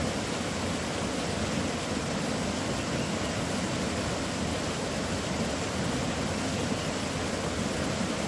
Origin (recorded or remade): recorded